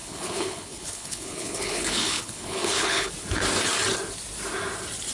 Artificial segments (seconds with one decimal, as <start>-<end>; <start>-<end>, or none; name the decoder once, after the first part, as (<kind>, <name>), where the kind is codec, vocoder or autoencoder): 0.0-3.1 (codec, HILCodec)